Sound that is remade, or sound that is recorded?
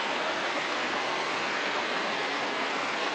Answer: remade